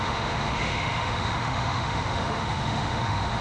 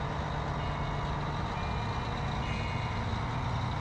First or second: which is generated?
first